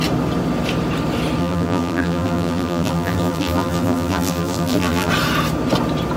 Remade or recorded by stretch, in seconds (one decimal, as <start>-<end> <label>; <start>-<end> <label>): 0.0-1.4 recorded; 1.4-5.1 remade; 5.1-6.2 recorded